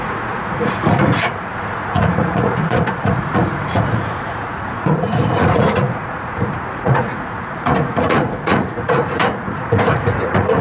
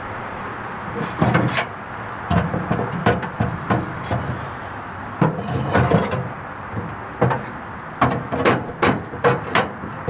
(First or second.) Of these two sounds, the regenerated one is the first